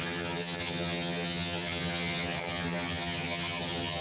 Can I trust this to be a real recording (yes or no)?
no